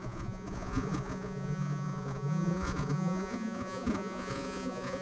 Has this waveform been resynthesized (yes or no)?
yes